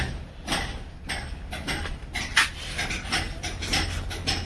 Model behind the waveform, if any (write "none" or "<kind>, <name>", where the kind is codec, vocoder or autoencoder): none